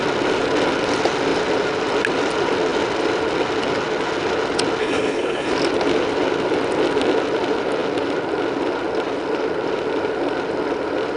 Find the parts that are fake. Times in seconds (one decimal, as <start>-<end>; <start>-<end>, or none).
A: 4.8-5.5